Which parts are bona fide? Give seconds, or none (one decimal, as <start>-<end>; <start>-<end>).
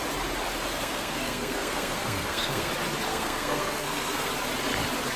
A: 0.0-0.7; 2.7-3.1; 4.3-5.2